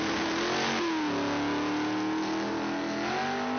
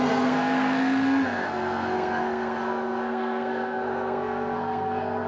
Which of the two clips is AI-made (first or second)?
second